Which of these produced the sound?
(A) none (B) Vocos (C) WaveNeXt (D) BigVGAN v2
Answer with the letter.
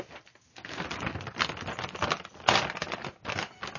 A